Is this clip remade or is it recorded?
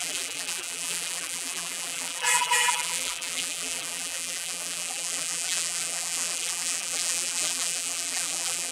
remade